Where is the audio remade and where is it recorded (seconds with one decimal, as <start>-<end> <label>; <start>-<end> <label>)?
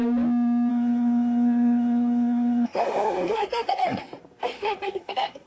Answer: 0.0-0.7 recorded; 0.7-4.0 remade; 4.0-4.4 recorded; 4.4-5.5 remade